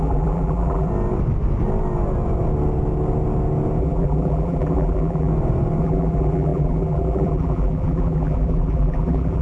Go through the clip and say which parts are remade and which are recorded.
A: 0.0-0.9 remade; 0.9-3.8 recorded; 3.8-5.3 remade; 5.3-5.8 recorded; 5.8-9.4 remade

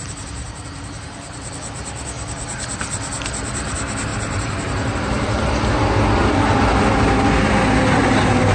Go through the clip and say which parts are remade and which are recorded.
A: 0.0-0.4 recorded; 0.4-1.5 remade; 1.5-4.1 recorded; 4.1-5.7 remade; 5.7-8.5 recorded

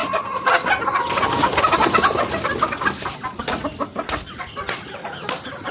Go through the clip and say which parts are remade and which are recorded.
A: 0.0-5.7 recorded

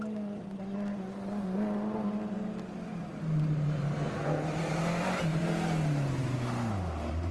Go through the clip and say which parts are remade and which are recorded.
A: 0.0-7.3 recorded

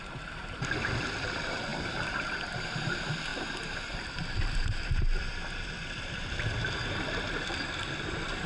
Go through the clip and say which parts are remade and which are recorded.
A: 0.0-3.3 remade; 3.3-4.4 recorded; 4.4-8.5 remade